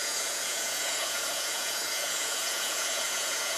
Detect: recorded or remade remade